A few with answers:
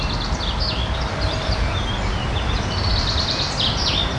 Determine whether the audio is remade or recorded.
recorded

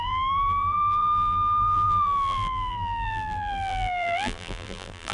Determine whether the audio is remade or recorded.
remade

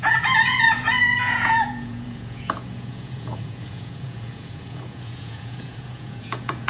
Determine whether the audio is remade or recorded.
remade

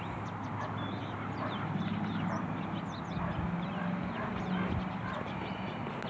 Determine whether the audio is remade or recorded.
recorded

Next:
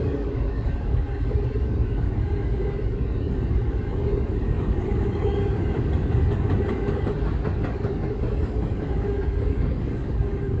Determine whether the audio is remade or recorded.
remade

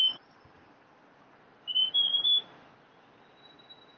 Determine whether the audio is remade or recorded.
recorded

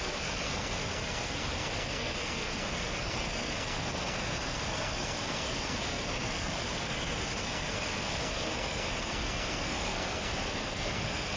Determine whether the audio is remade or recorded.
remade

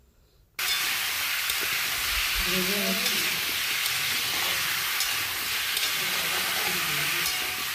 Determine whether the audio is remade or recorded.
recorded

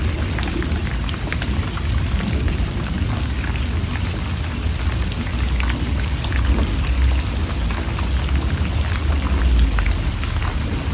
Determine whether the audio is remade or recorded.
recorded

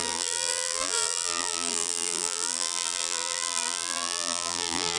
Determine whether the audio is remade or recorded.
remade